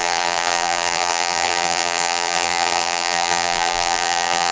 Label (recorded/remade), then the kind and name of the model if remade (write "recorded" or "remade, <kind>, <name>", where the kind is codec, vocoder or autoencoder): remade, vocoder, BigVGAN v2